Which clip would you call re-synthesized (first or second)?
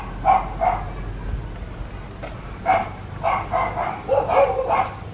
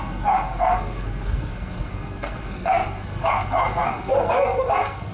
second